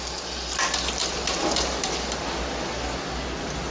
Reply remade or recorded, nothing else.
recorded